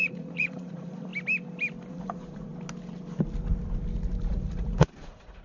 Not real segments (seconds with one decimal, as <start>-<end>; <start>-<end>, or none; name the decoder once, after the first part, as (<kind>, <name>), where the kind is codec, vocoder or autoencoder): 0.0-1.1 (vocoder, Vocos); 1.9-2.5; 4.3-5.4